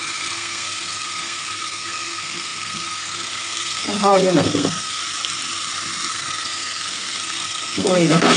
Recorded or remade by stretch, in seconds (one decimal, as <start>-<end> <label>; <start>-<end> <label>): 0.0-5.0 remade; 5.0-6.1 recorded; 6.1-8.4 remade